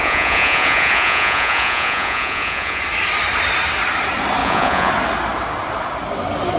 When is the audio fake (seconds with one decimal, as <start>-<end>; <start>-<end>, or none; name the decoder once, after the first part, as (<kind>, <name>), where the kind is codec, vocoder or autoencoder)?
0.0-2.8 (vocoder, Vocos); 4.4-4.9